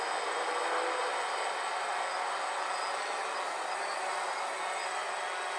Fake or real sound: real